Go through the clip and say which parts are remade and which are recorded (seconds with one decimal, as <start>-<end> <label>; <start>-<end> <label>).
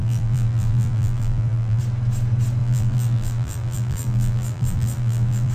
0.0-1.8 remade; 1.8-2.6 recorded; 2.6-5.5 remade